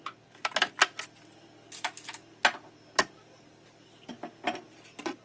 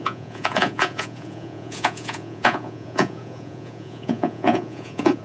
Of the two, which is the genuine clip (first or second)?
first